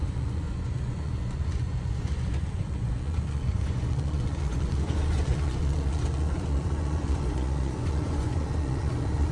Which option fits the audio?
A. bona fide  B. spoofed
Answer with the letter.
B